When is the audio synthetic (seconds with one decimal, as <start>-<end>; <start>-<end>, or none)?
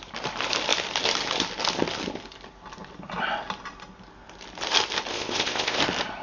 5.1-5.8